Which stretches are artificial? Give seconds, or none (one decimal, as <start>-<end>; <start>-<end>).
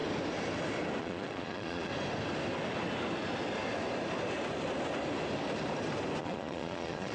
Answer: 1.0-1.9; 6.2-7.1